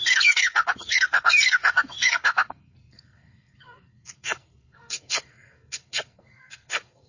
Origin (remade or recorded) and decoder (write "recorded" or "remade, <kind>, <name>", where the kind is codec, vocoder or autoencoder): remade, codec, SNAC